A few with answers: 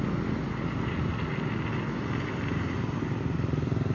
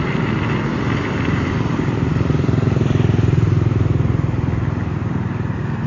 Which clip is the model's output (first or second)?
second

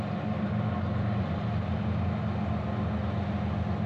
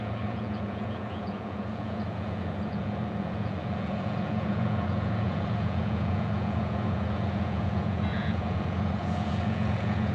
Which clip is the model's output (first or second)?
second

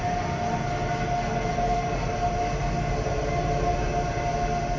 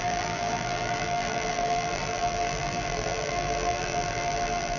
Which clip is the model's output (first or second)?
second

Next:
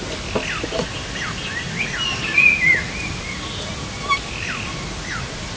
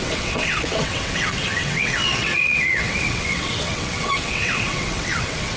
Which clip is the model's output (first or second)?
second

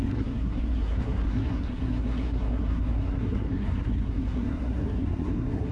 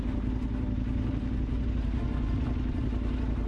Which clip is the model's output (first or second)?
first